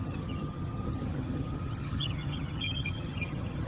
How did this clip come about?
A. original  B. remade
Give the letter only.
B